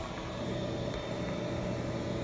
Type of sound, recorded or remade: recorded